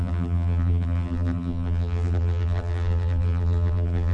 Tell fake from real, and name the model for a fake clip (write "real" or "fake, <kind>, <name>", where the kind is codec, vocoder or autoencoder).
fake, vocoder, BigVGAN v2